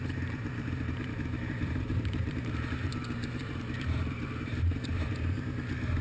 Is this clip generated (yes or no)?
yes